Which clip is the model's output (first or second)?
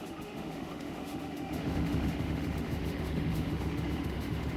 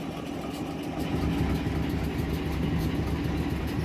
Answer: first